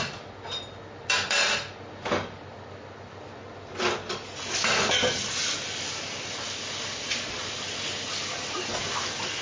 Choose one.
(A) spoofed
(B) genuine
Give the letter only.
B